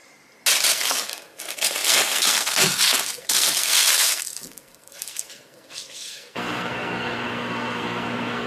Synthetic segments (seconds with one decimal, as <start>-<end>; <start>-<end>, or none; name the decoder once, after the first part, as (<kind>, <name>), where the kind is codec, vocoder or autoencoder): 0.7-8.5 (codec, SNAC)